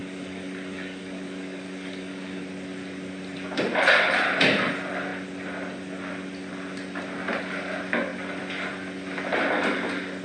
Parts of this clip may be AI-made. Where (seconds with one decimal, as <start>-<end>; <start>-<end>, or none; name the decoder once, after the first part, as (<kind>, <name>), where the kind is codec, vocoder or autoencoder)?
0.0-2.4 (codec, DAC)